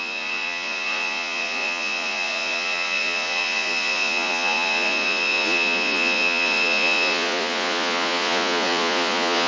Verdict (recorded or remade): remade